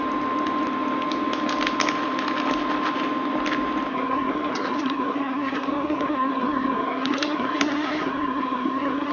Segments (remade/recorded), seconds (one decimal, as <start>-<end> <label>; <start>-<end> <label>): 0.0-3.9 recorded; 3.9-9.1 remade